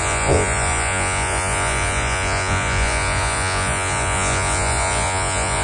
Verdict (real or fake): fake